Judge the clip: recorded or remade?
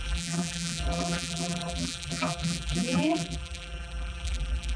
remade